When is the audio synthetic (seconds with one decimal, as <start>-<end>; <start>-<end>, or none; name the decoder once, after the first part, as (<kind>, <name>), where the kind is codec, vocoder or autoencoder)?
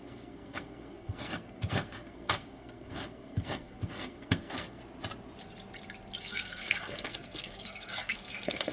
0.0-4.8 (codec, SNAC); 6.2-8.7